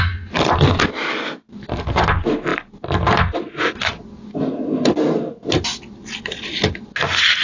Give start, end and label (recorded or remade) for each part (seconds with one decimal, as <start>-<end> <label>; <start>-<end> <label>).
0.0-7.4 recorded